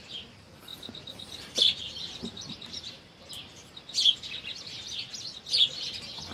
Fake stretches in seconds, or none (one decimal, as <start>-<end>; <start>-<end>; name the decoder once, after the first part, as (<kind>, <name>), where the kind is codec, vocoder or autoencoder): 0.7-3.0 (vocoder, BigVGAN v2); 3.6-5.1